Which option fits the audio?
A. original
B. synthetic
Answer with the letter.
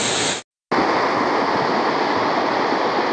A